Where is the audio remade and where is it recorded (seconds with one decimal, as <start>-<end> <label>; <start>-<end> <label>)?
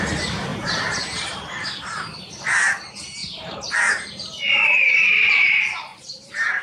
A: 0.0-6.6 remade